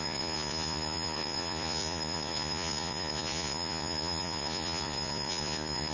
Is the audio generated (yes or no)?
yes